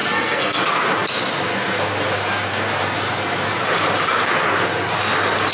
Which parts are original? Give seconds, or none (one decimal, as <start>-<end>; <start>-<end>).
0.6-5.5